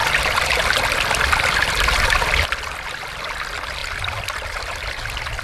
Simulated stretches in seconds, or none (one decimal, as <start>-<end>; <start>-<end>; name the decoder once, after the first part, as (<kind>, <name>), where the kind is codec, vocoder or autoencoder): 3.8-4.6 (vocoder, BigVGAN v2)